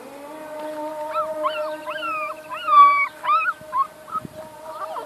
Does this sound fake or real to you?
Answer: real